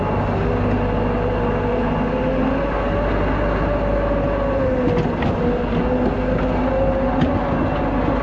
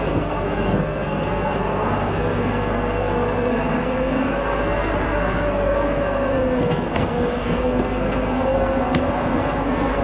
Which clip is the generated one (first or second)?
second